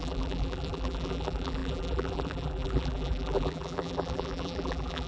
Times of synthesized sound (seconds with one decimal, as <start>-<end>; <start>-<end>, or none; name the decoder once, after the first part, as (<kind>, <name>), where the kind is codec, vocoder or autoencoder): 0.0-5.1 (vocoder, BigVGAN v2)